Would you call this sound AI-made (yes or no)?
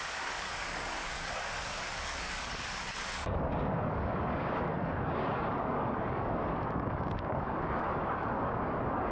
yes